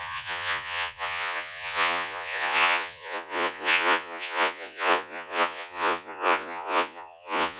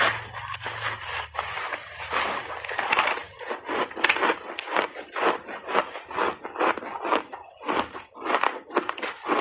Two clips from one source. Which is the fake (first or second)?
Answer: first